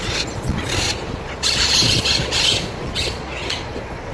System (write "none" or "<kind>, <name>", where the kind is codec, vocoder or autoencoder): vocoder, Vocos